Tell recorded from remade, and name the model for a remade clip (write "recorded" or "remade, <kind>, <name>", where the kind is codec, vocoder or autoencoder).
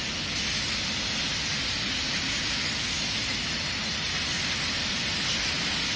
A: recorded